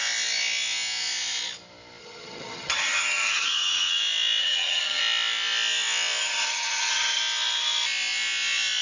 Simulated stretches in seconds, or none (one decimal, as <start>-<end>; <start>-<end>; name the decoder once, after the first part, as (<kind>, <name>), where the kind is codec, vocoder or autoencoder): 2.0-4.0 (vocoder, HiFi-GAN); 4.4-5.0; 6.2-7.2